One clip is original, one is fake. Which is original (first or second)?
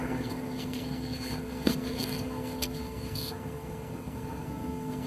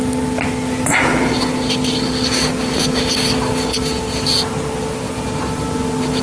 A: second